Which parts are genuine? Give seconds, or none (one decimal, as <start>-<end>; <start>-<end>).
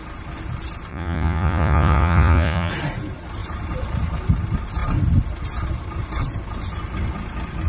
0.0-0.9; 2.7-7.7